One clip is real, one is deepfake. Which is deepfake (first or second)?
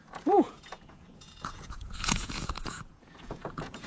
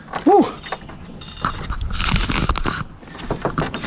first